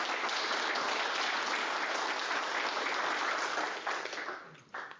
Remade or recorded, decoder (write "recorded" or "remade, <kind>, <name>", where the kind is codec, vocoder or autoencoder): recorded